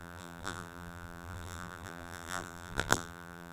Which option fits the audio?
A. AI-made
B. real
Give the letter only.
A